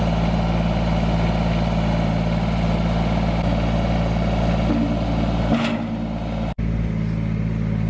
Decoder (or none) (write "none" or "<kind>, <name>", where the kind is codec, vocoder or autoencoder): none